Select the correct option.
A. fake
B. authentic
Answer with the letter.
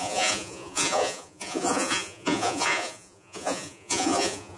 A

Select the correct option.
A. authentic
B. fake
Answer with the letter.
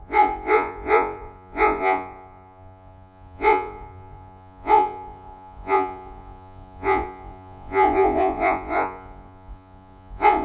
B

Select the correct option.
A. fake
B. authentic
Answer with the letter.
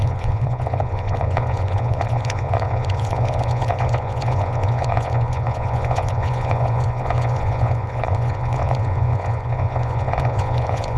A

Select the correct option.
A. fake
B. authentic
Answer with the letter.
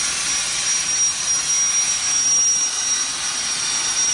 B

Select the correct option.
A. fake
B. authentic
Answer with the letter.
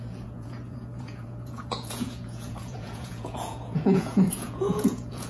A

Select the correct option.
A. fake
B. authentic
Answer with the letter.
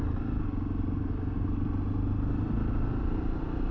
B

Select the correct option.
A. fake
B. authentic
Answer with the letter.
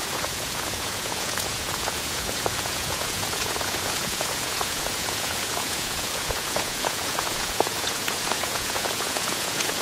A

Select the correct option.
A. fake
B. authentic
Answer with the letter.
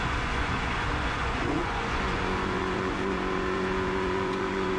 A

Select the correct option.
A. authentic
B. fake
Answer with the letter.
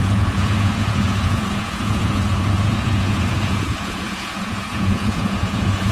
B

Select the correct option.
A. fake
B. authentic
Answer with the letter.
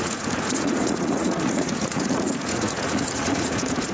A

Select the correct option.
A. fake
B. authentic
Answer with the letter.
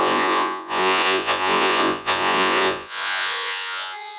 A